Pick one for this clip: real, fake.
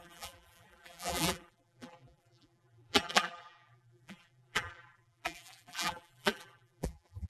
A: fake